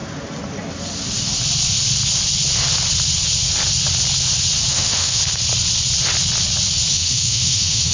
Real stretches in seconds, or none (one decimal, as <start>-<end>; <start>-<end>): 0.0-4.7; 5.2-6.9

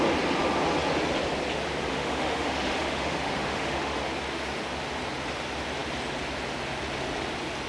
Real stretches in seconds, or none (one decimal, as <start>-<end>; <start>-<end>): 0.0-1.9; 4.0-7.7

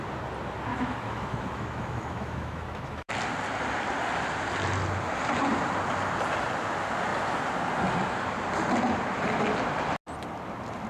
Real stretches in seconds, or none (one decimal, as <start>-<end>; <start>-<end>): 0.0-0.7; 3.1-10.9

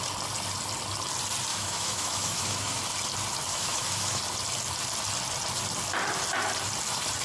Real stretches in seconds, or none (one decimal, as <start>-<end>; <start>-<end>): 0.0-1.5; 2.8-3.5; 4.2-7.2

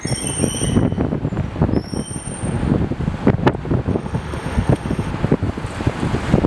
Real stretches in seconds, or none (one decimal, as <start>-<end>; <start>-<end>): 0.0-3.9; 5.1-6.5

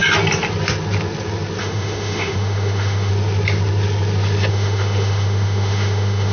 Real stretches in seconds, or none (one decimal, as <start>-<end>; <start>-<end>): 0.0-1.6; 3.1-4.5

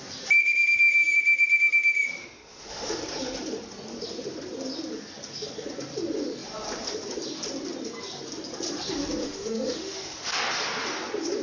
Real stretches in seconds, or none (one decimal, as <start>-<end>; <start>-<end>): 0.0-2.2; 3.0-9.2; 10.4-11.4

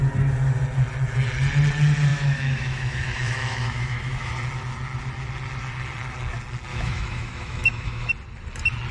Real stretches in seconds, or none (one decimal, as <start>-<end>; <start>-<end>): 0.0-2.1; 4.3-6.7; 8.1-8.9